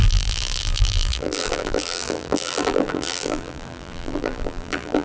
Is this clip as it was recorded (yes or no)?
no